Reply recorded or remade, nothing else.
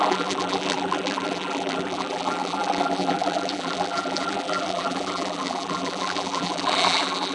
remade